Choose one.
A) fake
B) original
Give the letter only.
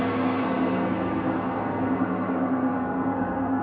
A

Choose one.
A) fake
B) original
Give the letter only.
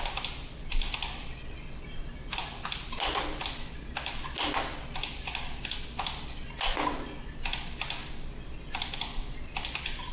B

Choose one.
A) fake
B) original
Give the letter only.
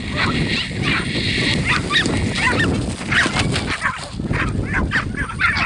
B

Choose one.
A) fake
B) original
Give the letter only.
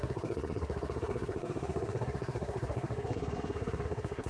A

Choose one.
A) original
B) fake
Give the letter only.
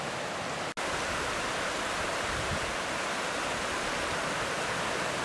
A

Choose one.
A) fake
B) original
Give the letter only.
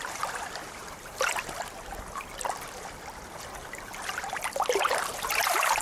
B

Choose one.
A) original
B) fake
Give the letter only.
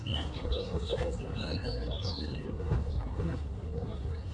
B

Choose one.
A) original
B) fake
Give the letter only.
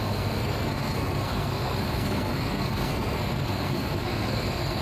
B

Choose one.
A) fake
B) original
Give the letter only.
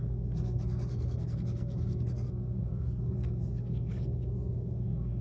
A